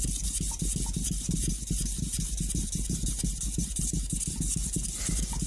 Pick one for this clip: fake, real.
real